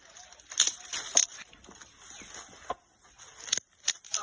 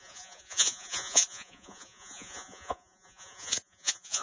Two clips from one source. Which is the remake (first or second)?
second